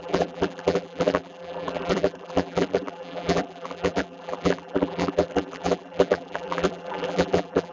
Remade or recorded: remade